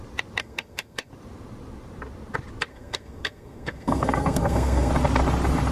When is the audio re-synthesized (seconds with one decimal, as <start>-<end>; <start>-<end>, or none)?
0.4-1.1; 2.7-4.9